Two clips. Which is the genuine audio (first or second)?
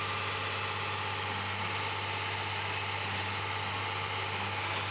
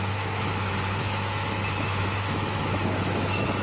first